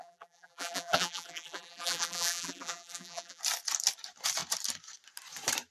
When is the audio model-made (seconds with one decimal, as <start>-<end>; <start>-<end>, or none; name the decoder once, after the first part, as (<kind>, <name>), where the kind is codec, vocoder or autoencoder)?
0.0-3.4 (vocoder, BigVGAN v2)